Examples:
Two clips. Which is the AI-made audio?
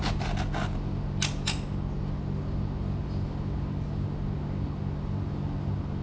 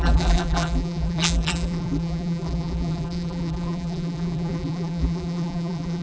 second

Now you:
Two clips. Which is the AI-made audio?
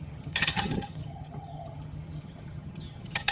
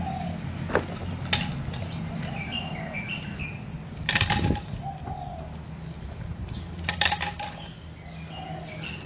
first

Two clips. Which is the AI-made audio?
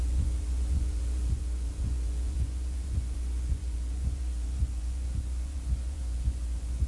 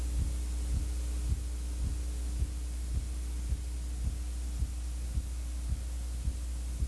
first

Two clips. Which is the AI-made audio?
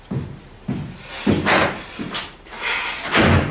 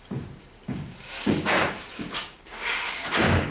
second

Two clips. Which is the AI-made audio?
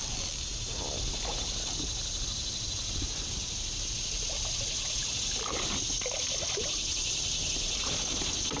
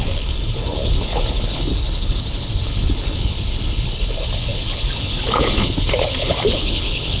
second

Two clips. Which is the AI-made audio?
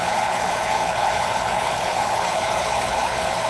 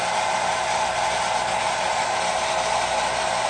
first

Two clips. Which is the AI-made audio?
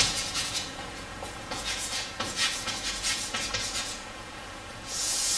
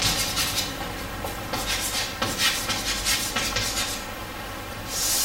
first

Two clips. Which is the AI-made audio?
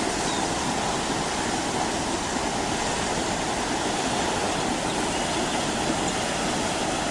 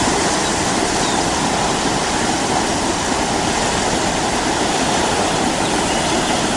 second